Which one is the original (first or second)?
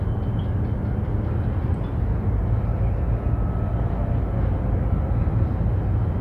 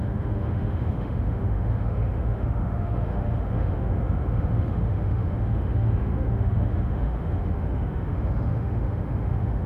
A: first